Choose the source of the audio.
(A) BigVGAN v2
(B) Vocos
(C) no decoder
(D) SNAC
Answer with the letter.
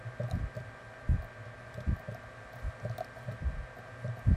C